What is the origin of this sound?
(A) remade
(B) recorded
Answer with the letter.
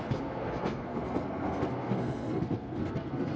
A